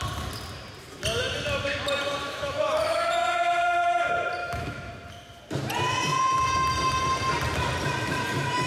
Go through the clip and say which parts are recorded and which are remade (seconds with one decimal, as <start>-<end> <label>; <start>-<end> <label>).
0.0-2.2 recorded; 2.2-3.1 remade; 3.1-4.4 recorded; 4.4-4.9 remade; 4.9-8.7 recorded